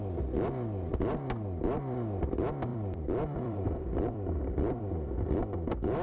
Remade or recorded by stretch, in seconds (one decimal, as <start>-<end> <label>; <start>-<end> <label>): 0.0-2.7 recorded; 2.7-4.8 remade; 4.8-6.0 recorded